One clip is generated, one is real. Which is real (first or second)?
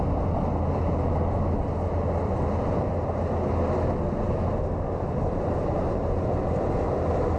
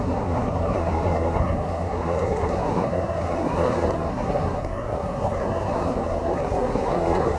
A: first